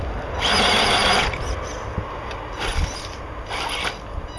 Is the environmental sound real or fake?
real